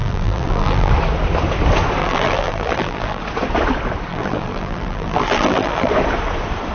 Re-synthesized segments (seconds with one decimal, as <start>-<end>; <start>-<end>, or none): 0.0-0.9; 2.0-3.2; 4.1-5.9